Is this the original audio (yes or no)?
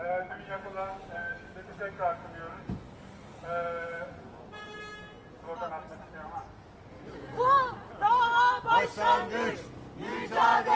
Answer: yes